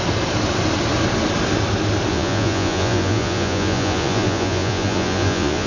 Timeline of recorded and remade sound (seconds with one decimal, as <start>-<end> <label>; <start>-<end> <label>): 0.0-2.1 recorded; 2.1-5.7 remade